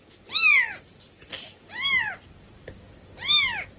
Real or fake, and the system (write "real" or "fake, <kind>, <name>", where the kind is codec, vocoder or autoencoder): fake, vocoder, BigVGAN v2